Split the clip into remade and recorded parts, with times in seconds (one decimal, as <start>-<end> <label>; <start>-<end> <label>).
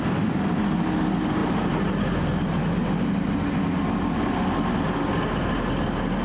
0.0-6.2 recorded